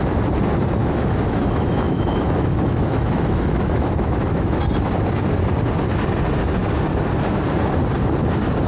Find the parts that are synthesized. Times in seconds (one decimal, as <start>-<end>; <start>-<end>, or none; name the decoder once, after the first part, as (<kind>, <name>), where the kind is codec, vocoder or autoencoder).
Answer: 0.8-4.6 (autoencoder, DAC-VAE)